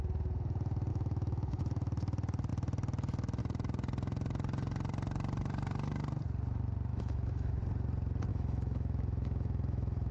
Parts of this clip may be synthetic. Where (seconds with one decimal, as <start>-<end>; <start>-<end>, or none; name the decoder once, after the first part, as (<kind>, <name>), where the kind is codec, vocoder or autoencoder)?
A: 0.9-1.6 (autoencoder, DAC-VAE); 6.9-7.6; 8.3-10.1